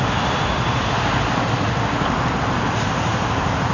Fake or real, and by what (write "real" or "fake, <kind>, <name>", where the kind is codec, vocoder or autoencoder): real